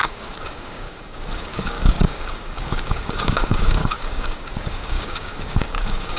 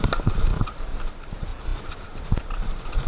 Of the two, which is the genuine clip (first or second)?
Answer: second